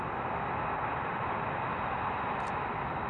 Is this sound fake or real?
real